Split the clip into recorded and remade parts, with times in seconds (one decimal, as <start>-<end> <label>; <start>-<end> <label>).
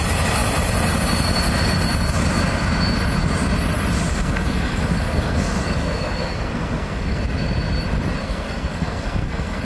0.0-4.1 recorded; 4.1-7.2 remade; 7.2-8.2 recorded; 8.2-9.6 remade